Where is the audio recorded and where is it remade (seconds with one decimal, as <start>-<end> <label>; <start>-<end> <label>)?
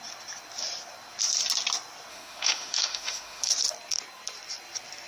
0.0-2.1 recorded; 2.1-3.5 remade; 3.5-5.1 recorded